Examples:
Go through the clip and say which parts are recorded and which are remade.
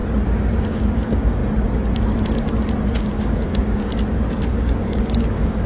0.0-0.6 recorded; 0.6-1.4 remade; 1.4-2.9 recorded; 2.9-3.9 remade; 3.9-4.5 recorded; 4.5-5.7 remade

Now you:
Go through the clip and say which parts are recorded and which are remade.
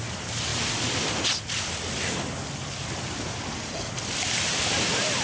0.0-5.2 recorded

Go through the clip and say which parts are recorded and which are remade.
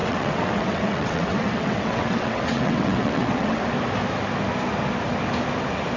0.0-3.6 remade; 3.6-6.0 recorded